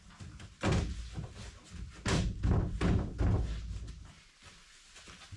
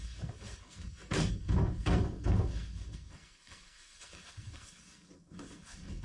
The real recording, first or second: first